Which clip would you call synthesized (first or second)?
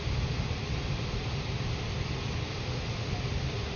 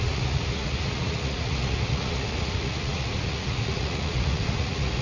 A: second